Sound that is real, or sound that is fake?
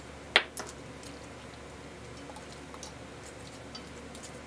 real